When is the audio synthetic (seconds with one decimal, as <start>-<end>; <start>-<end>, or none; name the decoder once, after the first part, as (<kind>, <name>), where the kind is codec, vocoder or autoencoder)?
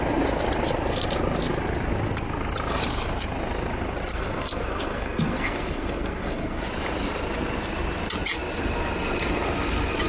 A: 4.1-6.6 (codec, SNAC)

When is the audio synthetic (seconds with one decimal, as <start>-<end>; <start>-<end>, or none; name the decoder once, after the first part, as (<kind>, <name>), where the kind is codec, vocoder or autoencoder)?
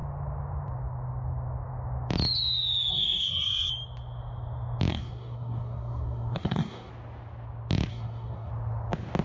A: 2.9-3.7 (codec, SNAC); 4.9-6.9; 7.9-8.5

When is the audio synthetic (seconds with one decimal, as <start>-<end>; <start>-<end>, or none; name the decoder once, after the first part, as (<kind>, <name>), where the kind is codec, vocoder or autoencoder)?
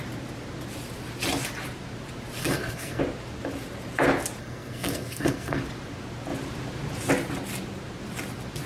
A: 2.4-3.0 (codec, SNAC); 4.4-5.6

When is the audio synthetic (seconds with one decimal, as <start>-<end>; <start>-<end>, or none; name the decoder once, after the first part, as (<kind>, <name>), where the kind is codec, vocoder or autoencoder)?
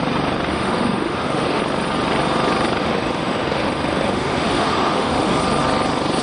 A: 0.5-1.6 (autoencoder, DAC-VAE); 2.8-5.3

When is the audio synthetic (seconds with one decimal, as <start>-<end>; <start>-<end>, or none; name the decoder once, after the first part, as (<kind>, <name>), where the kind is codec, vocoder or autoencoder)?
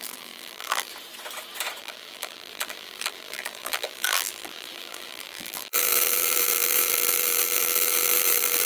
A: 0.0-0.9 (vocoder, BigVGAN v2); 1.8-8.7